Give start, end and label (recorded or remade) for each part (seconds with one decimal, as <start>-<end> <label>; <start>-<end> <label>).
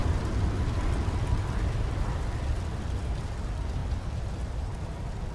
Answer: 0.0-5.3 recorded